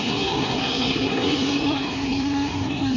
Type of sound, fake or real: fake